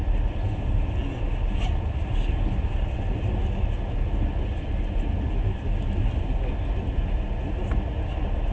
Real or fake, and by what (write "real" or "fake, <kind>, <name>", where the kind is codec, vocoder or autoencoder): real